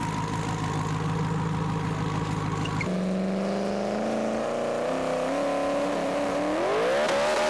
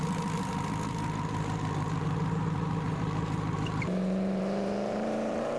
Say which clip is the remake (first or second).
second